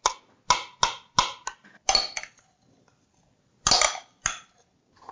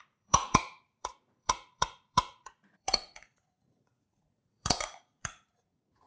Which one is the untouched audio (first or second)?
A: first